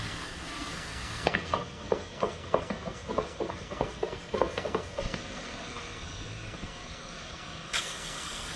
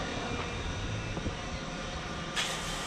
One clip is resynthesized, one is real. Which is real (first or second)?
second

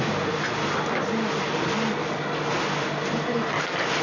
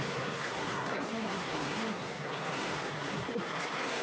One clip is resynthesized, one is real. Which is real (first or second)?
first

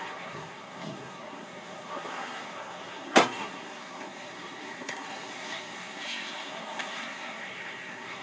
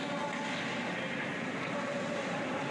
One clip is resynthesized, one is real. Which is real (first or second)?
second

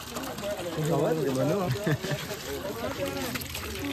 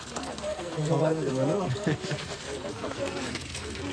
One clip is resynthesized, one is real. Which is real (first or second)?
first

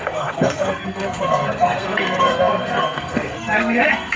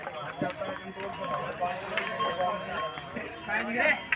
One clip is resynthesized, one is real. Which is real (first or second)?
second